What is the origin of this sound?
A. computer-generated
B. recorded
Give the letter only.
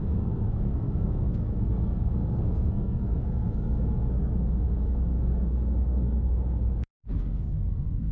A